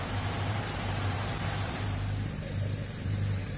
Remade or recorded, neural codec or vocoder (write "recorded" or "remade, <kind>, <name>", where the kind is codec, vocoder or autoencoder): remade, vocoder, BigVGAN v2